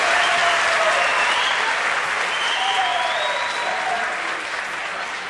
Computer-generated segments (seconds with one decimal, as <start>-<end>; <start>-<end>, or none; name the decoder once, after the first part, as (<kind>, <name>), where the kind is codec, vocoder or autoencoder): 0.0-0.4 (vocoder, BigVGAN v2); 2.3-2.9; 4.5-5.3